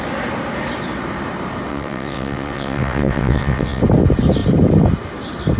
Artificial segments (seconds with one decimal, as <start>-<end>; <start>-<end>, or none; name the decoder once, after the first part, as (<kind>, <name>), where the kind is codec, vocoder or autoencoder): 1.7-3.8 (vocoder, WaveNeXt)